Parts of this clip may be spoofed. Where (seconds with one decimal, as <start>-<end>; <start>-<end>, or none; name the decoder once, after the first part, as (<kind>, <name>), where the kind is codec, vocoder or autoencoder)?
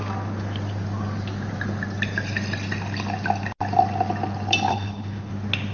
4.7-5.3 (codec, HILCodec)